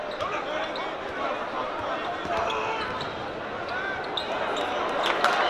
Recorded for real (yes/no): yes